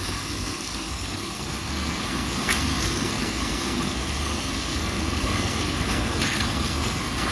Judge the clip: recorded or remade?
remade